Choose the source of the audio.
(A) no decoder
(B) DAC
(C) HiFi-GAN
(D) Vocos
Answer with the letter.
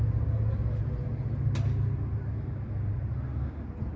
A